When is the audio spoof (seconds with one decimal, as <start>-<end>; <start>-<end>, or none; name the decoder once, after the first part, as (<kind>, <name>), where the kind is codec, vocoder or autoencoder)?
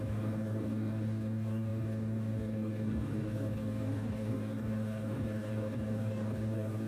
0.0-6.9 (codec, DAC)